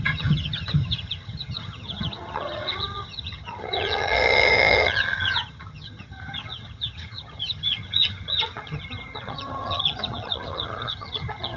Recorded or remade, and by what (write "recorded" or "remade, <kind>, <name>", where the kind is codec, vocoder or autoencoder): remade, vocoder, HiFi-GAN